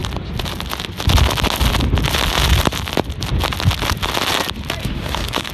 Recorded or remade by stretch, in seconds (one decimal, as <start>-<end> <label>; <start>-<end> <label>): 0.0-4.8 recorded; 4.8-5.5 remade